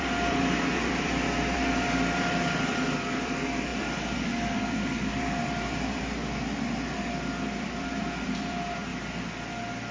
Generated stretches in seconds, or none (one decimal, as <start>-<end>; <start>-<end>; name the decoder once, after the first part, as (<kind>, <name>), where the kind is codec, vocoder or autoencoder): 0.0-6.2 (vocoder, BigVGAN v2); 7.6-8.9

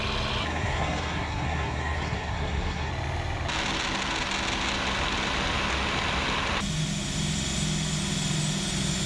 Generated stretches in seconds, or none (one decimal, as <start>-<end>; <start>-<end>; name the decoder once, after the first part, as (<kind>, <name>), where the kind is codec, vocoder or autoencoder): 0.4-2.9 (codec, SNAC)

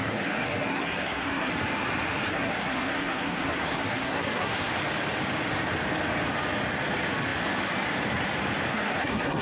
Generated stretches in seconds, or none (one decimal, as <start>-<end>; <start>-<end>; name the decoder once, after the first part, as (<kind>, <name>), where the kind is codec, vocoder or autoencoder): 0.0-1.5 (codec, SNAC); 2.3-4.7; 8.7-9.4